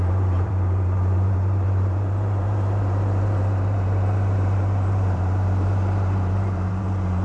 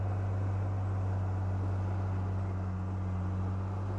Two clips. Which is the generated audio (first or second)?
first